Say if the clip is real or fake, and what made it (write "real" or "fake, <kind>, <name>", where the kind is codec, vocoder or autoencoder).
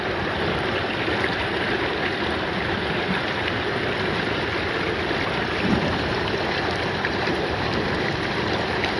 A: fake, vocoder, BigVGAN v2